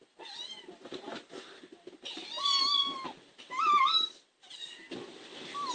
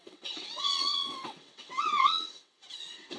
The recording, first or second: first